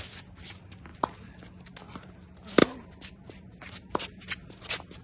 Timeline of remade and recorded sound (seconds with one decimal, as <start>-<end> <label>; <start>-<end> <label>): 0.0-2.6 recorded; 2.6-4.0 remade; 4.0-5.0 recorded